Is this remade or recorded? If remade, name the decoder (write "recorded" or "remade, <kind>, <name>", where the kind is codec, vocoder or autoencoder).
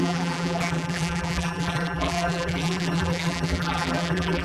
remade, vocoder, BigVGAN v2